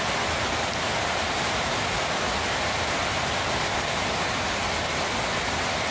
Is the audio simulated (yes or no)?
no